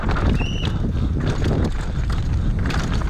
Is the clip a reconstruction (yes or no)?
no